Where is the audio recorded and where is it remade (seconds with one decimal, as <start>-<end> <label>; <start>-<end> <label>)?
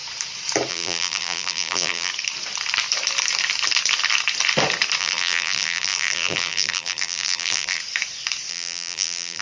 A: 0.0-0.7 recorded; 0.7-2.1 remade; 2.1-5.0 recorded; 5.0-7.8 remade; 7.8-8.5 recorded; 8.5-9.4 remade